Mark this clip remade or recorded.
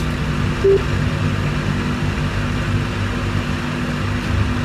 recorded